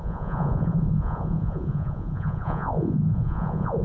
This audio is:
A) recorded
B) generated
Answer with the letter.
B